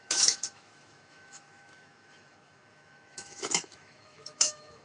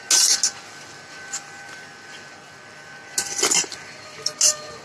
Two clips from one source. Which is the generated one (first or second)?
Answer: first